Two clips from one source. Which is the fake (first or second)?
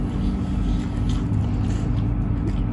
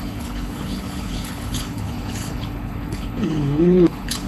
second